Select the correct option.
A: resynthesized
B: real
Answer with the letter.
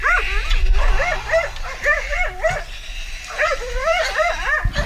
B